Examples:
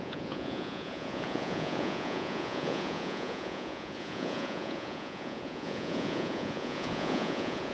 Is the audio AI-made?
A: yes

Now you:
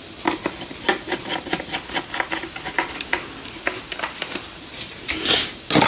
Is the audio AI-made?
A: no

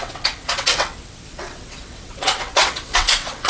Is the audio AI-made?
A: yes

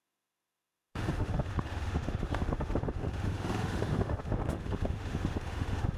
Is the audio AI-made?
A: yes